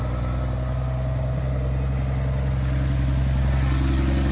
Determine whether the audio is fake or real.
real